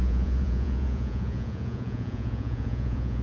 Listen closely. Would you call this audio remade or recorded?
remade